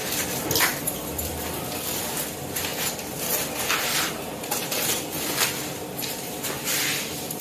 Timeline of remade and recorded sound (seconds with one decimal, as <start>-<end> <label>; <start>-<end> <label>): 0.0-0.6 recorded; 0.6-7.4 remade